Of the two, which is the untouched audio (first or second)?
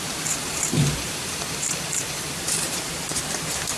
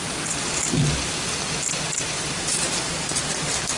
second